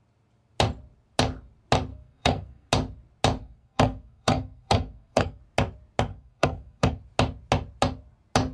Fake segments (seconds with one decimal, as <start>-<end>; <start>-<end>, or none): 1.9-2.7; 3.4-5.4; 6.1-7.0